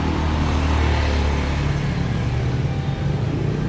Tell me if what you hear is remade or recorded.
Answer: recorded